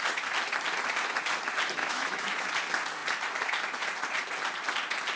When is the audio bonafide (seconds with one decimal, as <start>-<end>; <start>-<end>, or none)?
0.0-1.8; 2.5-5.2